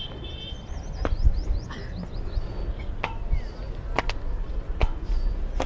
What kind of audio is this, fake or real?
real